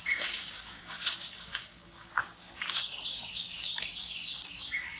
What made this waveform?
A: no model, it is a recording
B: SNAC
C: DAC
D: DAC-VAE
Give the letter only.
C